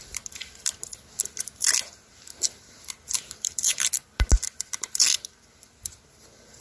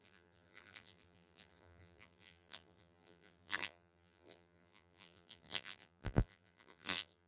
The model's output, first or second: second